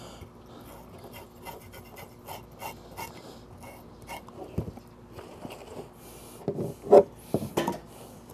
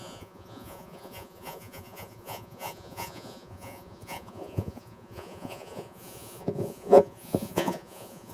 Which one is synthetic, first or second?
second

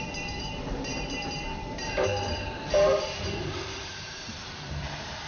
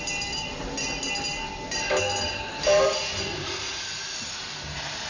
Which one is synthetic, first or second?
first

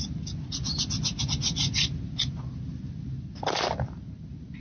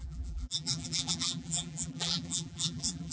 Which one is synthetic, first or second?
second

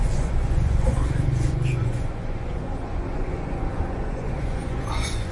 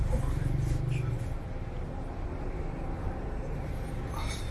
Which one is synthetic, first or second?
first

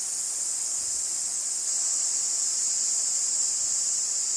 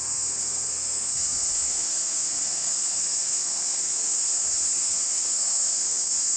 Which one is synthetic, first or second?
second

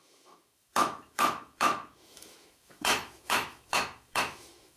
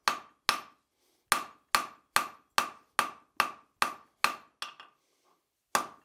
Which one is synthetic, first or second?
first